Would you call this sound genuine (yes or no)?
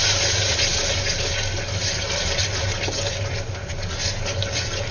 yes